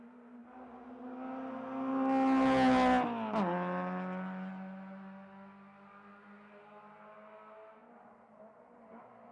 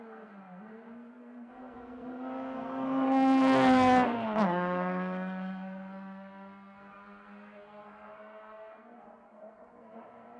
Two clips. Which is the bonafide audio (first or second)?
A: first